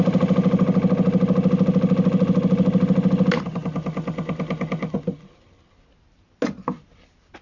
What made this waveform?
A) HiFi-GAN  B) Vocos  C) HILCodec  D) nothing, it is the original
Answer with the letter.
D